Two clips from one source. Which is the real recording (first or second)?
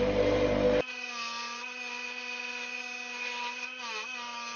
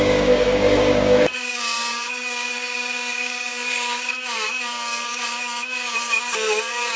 first